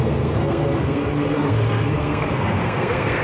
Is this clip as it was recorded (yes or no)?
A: no